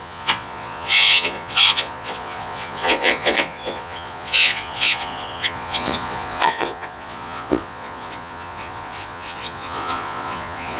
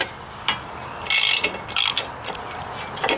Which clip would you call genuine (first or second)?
second